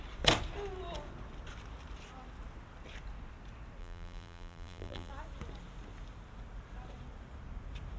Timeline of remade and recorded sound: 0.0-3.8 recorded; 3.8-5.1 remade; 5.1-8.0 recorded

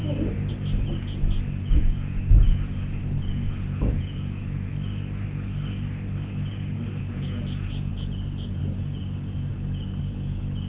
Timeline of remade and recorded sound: 0.0-1.0 recorded; 1.0-4.7 remade; 4.7-7.0 recorded; 7.0-10.7 remade

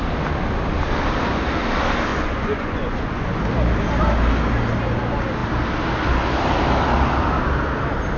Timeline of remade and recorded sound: 0.0-2.1 recorded; 2.1-3.4 remade; 3.4-8.2 recorded